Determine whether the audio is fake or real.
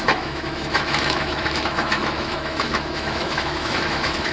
fake